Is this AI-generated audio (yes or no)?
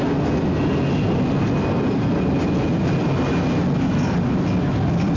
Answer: no